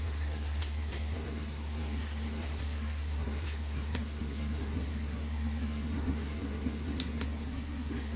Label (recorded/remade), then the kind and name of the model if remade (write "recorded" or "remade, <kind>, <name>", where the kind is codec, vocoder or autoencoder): remade, codec, SNAC